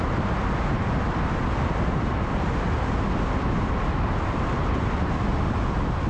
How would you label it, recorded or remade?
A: recorded